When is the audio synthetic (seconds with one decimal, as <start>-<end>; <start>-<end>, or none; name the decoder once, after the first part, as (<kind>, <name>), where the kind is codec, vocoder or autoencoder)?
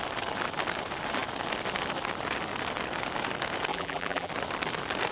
3.7-4.3 (vocoder, BigVGAN v2)